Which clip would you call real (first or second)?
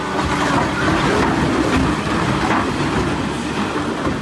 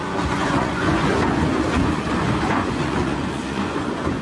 first